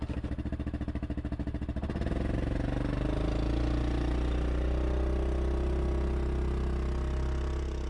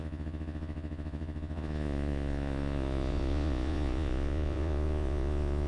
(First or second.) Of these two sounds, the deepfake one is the second